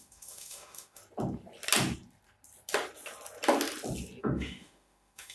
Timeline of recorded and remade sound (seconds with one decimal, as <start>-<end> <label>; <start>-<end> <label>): 0.0-1.0 remade; 1.0-4.2 recorded; 4.2-5.3 remade